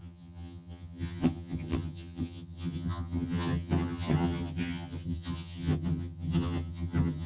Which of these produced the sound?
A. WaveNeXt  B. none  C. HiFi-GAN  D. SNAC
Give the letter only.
C